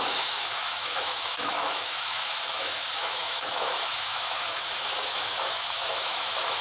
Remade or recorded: remade